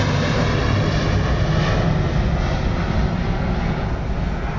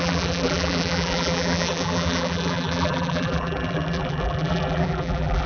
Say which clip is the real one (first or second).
first